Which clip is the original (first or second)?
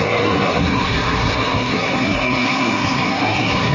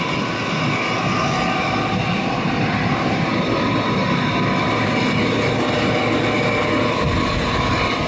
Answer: second